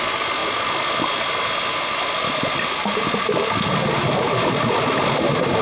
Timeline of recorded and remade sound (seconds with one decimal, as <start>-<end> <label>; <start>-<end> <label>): 0.0-5.6 recorded

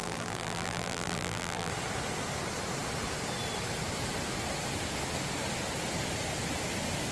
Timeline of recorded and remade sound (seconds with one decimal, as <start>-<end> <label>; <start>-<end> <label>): 0.0-1.7 remade; 1.7-7.1 recorded

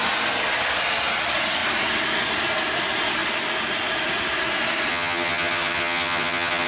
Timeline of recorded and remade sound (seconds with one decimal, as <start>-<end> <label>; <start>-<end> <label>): 0.0-4.9 recorded; 4.9-6.7 remade

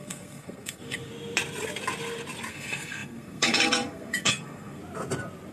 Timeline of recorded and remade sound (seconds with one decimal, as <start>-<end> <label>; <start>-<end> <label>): 0.0-1.1 remade; 1.1-2.5 recorded; 2.5-4.8 remade; 4.8-5.5 recorded

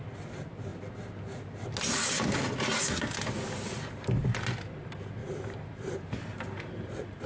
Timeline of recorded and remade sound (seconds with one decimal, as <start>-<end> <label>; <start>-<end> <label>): 0.0-5.2 recorded; 5.2-7.3 remade

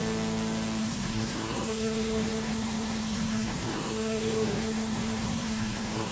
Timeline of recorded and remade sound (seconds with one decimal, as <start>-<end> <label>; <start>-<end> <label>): 0.0-0.8 recorded; 0.8-6.1 remade